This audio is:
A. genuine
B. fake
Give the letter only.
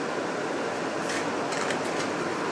A